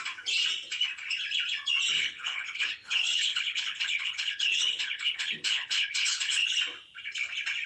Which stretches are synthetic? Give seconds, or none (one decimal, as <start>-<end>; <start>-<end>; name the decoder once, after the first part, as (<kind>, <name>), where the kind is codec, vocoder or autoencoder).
2.0-6.6 (codec, HILCodec)